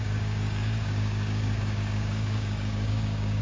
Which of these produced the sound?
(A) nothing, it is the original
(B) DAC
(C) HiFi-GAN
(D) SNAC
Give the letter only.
B